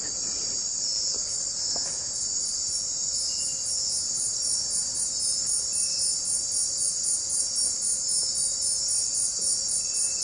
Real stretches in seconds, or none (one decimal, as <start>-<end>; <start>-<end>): 0.0-10.2